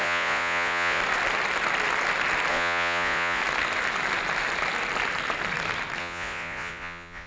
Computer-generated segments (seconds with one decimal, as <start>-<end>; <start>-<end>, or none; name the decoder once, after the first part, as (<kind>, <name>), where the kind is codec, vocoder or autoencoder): 0.0-1.0 (vocoder, Vocos); 2.5-3.4; 6.0-7.3